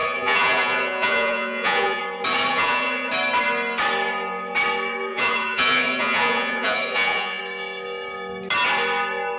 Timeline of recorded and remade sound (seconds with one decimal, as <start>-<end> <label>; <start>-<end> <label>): 0.0-2.0 remade; 2.0-2.5 recorded; 2.5-3.1 remade; 3.1-5.1 recorded; 5.1-7.4 remade; 7.4-9.4 recorded